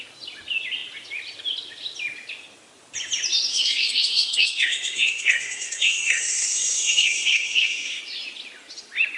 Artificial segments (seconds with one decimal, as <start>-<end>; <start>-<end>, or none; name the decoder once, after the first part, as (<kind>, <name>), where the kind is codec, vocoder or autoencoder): 3.5-8.0 (codec, SNAC)